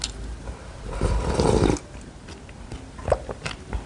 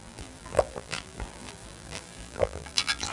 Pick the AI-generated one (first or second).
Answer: second